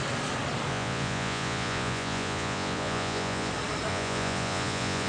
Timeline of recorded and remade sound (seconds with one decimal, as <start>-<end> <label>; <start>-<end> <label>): 0.0-0.7 recorded; 0.7-3.5 remade; 3.5-3.9 recorded; 3.9-5.1 remade